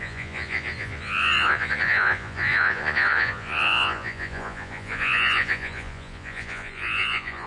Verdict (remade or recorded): remade